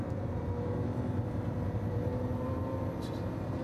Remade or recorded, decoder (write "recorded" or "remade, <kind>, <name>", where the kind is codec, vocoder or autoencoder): remade, vocoder, BigVGAN v2